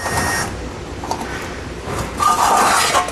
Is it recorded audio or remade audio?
recorded